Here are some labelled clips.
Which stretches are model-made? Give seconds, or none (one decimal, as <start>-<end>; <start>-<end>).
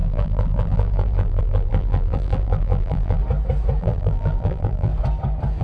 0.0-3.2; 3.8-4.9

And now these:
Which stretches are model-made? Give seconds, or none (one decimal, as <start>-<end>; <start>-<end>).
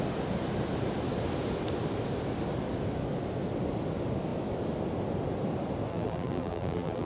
5.9-7.1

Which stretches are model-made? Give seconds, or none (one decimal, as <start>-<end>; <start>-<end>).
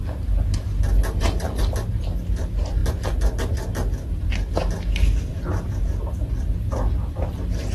5.3-6.3